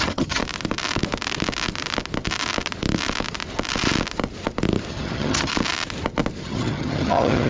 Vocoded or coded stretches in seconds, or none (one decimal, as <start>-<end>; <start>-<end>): 0.0-0.4; 4.9-5.5; 6.4-7.5